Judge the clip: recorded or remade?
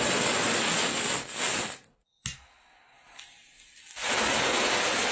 recorded